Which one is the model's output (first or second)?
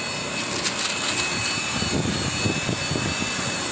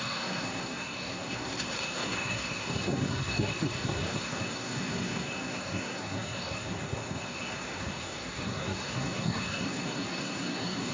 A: second